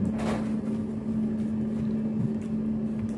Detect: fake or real real